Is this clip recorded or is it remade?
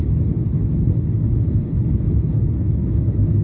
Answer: remade